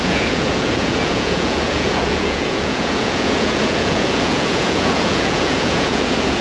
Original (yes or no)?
no